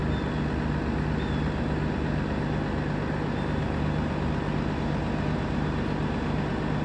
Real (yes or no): yes